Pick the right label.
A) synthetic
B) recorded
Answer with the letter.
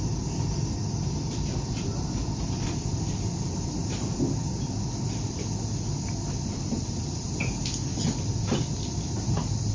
B